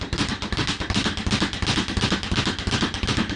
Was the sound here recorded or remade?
recorded